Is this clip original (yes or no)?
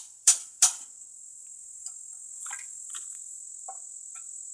no